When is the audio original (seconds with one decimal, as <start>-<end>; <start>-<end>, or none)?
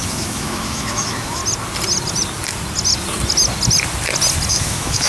1.4-4.5